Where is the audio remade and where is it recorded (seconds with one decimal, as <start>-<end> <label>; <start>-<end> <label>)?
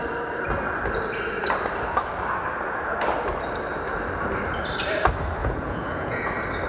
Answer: 0.0-5.4 recorded; 5.4-6.2 remade; 6.2-6.7 recorded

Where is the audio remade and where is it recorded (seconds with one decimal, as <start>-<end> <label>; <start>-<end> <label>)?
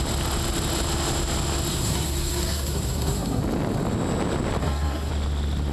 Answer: 0.0-1.7 recorded; 1.7-3.4 remade; 3.4-4.6 recorded; 4.6-5.1 remade; 5.1-5.7 recorded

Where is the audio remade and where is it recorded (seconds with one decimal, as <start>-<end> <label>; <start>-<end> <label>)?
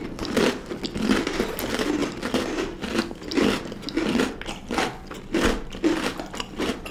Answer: 0.0-6.9 recorded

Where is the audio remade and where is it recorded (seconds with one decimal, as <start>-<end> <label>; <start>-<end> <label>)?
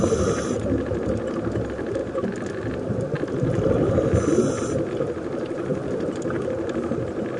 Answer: 0.0-7.4 recorded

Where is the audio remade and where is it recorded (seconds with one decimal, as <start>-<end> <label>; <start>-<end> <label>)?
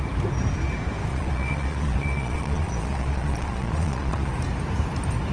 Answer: 0.0-1.1 recorded; 1.1-4.3 remade; 4.3-5.3 recorded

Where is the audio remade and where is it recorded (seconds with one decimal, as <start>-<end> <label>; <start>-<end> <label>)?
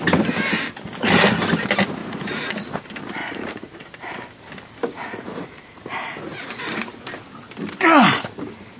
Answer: 0.0-2.0 recorded; 2.0-2.8 remade; 2.8-3.2 recorded; 3.2-3.9 remade; 3.9-4.9 recorded; 4.9-7.0 remade; 7.0-8.8 recorded